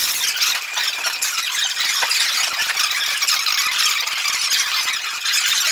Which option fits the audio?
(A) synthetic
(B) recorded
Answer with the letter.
B